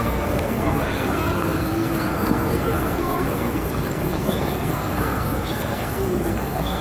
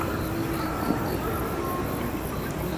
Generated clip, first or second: first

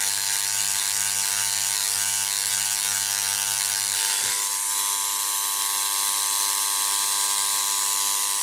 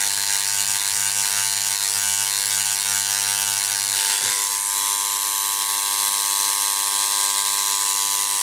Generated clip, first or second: first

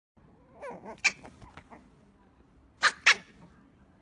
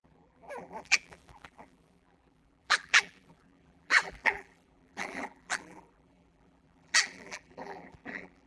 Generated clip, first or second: second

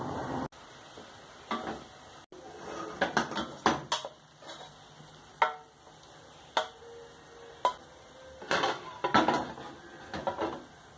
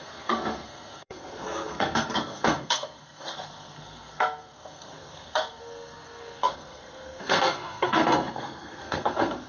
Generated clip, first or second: second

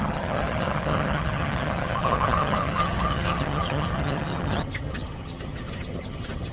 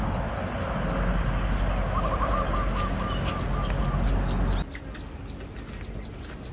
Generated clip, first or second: first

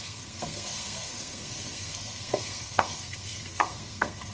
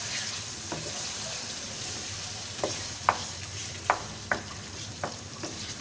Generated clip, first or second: first